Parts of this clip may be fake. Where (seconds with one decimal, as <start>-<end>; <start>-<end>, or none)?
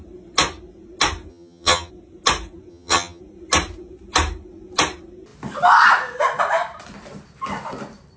1.3-1.9; 2.7-3.2